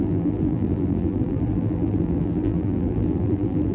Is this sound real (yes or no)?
no